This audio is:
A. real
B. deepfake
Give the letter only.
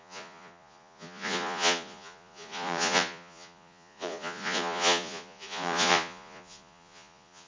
B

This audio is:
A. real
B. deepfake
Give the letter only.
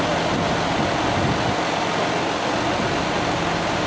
A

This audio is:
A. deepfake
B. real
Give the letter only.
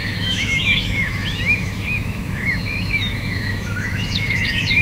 A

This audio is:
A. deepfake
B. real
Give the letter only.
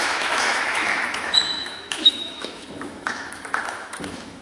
A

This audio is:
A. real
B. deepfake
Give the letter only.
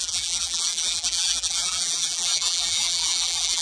B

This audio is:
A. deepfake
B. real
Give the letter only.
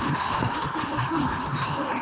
A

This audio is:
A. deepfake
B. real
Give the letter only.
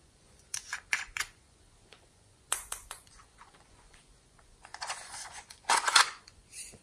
A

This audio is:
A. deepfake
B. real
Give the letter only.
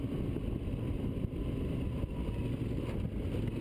B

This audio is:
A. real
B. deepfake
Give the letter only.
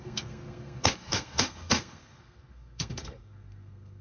B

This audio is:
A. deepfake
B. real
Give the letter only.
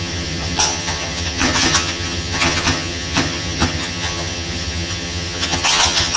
A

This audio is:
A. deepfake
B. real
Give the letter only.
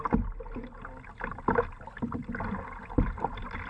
B